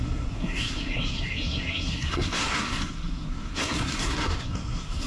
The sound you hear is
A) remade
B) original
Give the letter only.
A